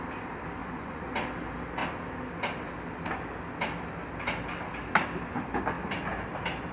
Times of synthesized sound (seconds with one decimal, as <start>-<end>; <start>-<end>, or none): 0.6-1.1